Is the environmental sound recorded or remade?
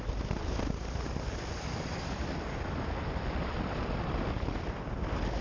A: remade